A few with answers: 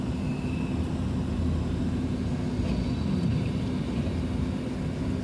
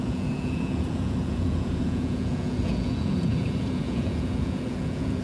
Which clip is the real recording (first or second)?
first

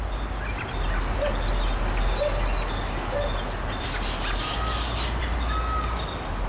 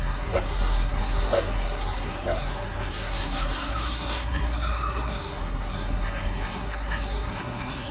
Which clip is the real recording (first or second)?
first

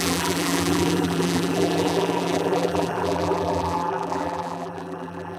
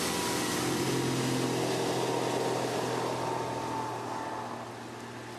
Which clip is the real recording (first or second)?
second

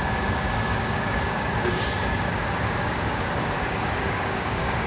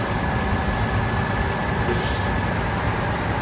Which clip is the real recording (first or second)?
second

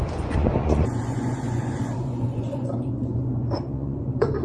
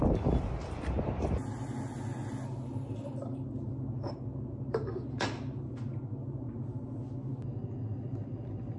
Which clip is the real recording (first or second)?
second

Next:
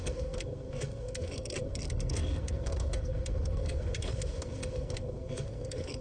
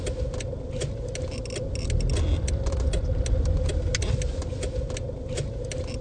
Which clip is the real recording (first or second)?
second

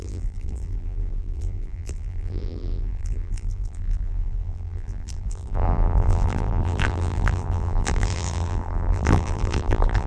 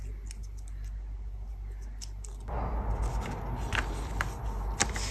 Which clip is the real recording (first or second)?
second